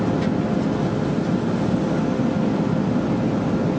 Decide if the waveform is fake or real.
real